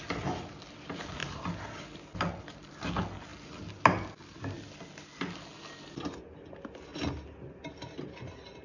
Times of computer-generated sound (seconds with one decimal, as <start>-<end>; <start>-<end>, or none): none